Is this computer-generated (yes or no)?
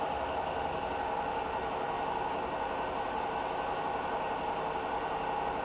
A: no